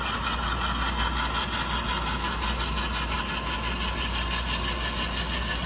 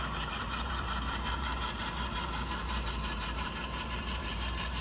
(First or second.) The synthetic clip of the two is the second